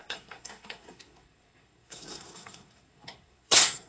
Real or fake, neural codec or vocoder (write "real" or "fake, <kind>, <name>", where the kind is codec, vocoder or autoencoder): fake, codec, SNAC